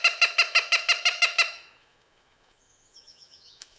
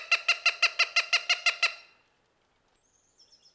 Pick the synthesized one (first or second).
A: first